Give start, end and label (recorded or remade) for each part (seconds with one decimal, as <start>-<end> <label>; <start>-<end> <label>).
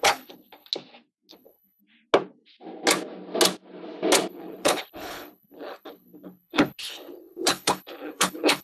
0.0-0.7 remade; 0.7-1.3 recorded; 1.3-1.8 remade; 1.8-4.3 recorded; 4.3-8.6 remade